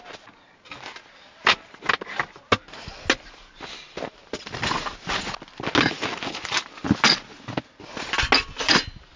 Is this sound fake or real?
real